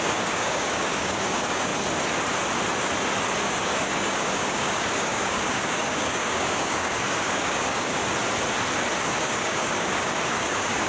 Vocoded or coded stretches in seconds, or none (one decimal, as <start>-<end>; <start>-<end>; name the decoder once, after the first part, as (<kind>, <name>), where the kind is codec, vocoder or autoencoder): 0.0-1.7 (codec, DAC); 3.4-8.0; 9.2-10.9